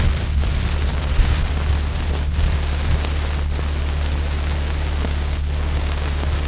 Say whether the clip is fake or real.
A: real